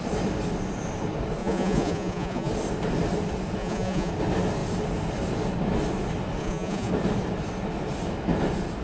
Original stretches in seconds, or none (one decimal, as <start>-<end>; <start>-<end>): 0.0-1.4; 2.5-3.6; 4.1-6.4; 6.9-8.8